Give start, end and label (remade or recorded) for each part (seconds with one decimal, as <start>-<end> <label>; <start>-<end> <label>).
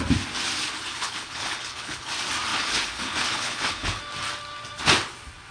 0.0-0.9 recorded; 0.9-2.1 remade; 2.1-2.5 recorded; 2.5-4.0 remade; 4.0-5.5 recorded